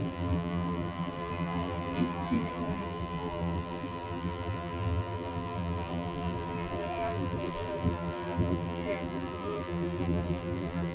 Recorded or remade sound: remade